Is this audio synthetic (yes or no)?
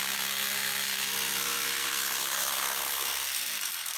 yes